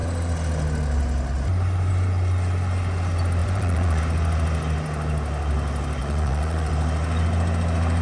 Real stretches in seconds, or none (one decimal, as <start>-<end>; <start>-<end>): 0.0-3.4; 4.0-6.0; 6.7-8.0